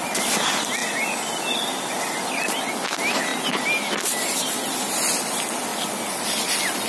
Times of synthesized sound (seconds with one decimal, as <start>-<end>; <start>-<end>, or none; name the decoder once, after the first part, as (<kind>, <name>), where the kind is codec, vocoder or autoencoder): none